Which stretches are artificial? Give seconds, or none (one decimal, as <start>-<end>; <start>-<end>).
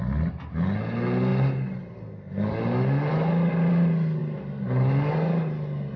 none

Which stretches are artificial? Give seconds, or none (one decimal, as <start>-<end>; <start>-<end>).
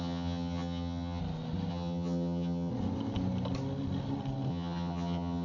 0.0-1.2; 1.7-2.7; 4.5-5.4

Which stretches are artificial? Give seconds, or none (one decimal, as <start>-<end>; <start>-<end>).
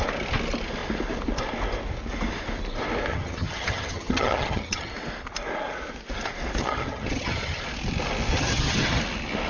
3.1-4.9; 6.6-7.6; 8.3-9.0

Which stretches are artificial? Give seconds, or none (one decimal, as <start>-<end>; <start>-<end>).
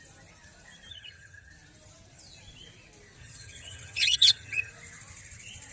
0.9-1.5; 3.2-4.7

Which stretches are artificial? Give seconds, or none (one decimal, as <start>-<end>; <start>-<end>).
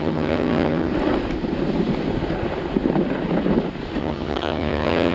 0.0-0.9; 4.0-5.1